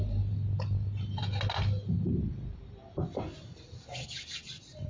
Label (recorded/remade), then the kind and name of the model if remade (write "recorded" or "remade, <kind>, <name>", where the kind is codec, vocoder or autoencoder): recorded